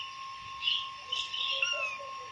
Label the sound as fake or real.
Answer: real